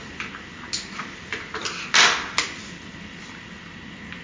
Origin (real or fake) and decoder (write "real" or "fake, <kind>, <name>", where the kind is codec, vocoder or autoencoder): real